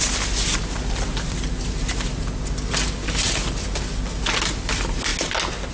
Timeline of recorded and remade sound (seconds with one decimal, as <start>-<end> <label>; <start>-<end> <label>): 0.0-5.7 recorded